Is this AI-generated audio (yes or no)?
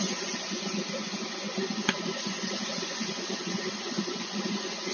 yes